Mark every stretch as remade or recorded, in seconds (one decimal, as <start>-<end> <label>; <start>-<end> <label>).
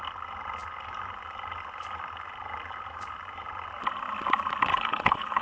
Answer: 0.0-4.7 recorded; 4.7-5.4 remade